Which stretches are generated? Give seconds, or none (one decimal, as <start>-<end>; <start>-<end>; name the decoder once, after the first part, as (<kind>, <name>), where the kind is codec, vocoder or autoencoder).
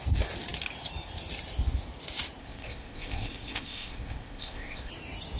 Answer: 2.4-4.9 (codec, ZipCodec)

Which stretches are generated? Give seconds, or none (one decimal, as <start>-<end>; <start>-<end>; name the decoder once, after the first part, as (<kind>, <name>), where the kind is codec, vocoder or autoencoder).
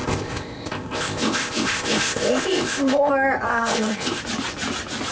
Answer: 0.0-3.1 (codec, ZipCodec); 3.5-4.2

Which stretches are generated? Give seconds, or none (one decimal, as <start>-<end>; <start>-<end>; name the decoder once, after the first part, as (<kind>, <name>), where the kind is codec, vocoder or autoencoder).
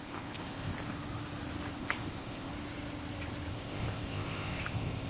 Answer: 0.0-0.7 (codec, ZipCodec); 1.7-2.5; 3.5-5.1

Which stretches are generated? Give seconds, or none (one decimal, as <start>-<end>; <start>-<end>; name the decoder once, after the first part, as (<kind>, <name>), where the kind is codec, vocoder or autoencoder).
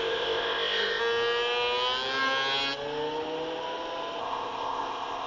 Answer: 0.0-1.0 (codec, ZipCodec); 4.2-5.3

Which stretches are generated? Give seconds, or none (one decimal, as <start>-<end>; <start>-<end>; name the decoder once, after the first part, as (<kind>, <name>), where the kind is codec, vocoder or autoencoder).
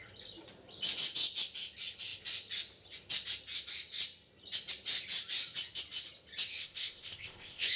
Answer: 6.6-7.8 (codec, ZipCodec)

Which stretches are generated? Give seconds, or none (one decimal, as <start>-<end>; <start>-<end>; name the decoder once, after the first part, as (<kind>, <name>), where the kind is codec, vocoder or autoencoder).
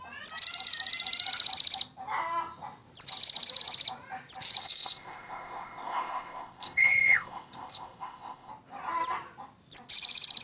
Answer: 4.6-8.5 (codec, ZipCodec)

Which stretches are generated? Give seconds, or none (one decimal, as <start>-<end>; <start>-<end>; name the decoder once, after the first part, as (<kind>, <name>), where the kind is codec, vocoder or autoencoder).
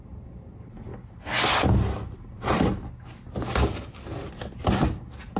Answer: none